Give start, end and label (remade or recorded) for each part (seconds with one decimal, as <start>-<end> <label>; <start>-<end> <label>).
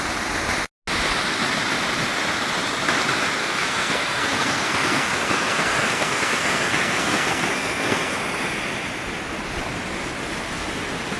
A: 0.0-3.4 recorded; 3.4-8.2 remade; 8.2-11.2 recorded